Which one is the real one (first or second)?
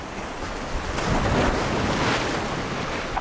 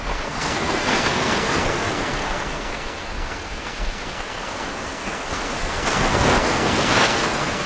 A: first